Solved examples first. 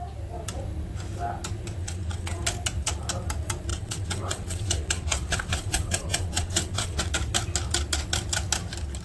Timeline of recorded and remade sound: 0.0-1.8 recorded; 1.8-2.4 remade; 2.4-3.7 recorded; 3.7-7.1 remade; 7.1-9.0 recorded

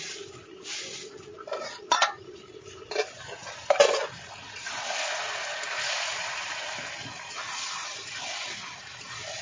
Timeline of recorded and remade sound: 0.0-9.4 recorded

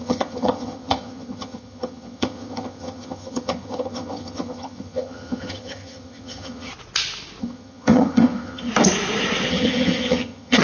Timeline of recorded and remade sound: 0.0-6.7 remade; 6.7-7.4 recorded; 7.4-8.7 remade; 8.7-9.5 recorded; 9.5-10.6 remade

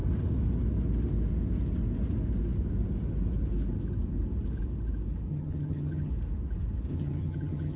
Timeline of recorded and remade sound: 0.0-5.3 recorded; 5.3-6.1 remade; 6.1-6.9 recorded; 6.9-7.8 remade